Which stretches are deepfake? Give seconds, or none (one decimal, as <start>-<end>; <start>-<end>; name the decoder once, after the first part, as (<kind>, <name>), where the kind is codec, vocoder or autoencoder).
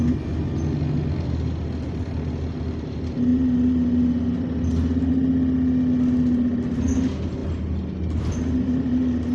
none